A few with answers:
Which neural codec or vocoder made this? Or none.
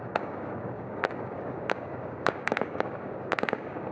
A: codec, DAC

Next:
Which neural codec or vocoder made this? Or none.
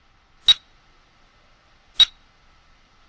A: none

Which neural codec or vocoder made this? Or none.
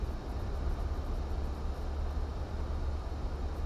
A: none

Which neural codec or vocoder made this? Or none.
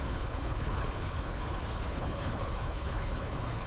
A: codec, HILCodec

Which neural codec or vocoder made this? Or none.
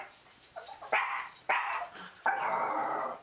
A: vocoder, BigVGAN v2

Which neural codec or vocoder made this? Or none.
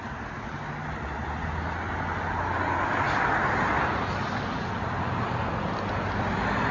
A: none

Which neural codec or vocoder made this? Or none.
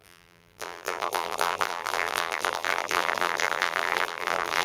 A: vocoder, BigVGAN v2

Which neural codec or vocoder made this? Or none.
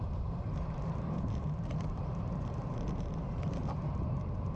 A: vocoder, BigVGAN v2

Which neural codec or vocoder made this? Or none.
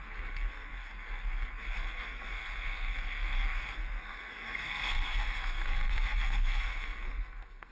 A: codec, SNAC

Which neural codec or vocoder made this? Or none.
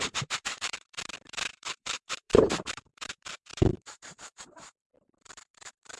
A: vocoder, BigVGAN v2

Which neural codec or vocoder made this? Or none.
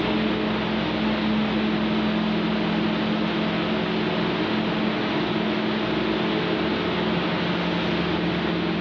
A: none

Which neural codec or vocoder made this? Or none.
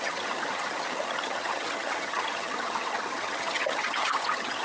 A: vocoder, HiFi-GAN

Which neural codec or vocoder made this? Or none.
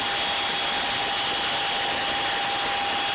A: none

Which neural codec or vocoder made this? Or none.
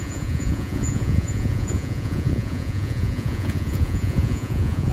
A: vocoder, Vocos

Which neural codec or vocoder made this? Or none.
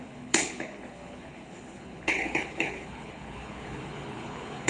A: codec, HILCodec